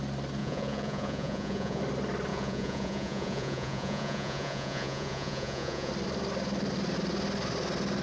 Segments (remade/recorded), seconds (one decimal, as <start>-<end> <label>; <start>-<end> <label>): 0.0-0.4 recorded; 0.4-1.8 remade; 1.8-2.3 recorded; 2.3-5.9 remade; 5.9-8.0 recorded